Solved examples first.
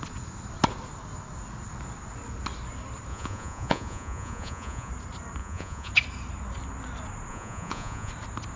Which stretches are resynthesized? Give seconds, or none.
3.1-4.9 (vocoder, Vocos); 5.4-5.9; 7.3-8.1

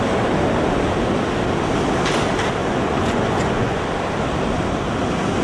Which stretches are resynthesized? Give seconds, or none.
2.6-3.8 (vocoder, Vocos)

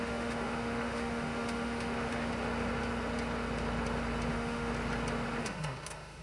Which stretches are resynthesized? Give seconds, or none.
0.0-2.3 (autoencoder, DAC-VAE); 4.3-4.7; 5.4-6.2